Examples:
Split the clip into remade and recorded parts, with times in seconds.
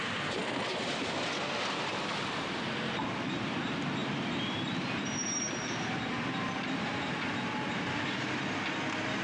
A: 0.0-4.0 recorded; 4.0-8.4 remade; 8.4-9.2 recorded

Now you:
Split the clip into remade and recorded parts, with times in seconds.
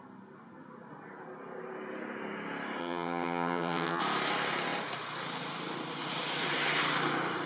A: 0.0-2.8 recorded; 2.8-4.0 remade; 4.0-7.5 recorded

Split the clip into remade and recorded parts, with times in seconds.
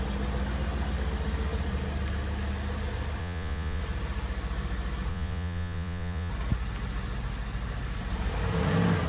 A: 0.0-3.2 recorded; 3.2-3.8 remade; 3.8-5.1 recorded; 5.1-6.3 remade; 6.3-9.1 recorded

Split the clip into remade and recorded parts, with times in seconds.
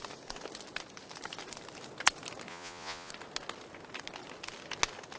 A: 0.0-2.5 recorded; 2.5-3.1 remade; 3.1-5.2 recorded